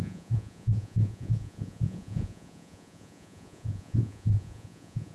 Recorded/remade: remade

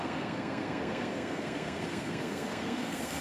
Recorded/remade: remade